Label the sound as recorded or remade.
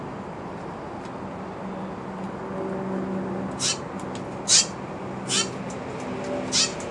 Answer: recorded